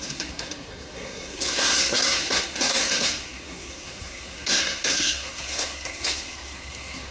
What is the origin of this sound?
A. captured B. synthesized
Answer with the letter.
B